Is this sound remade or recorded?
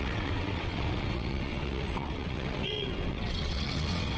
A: remade